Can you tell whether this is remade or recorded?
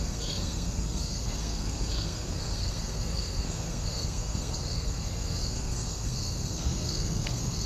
remade